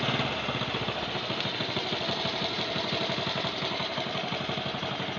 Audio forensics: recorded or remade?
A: recorded